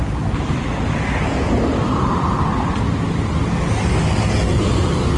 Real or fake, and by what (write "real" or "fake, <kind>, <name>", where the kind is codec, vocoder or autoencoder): real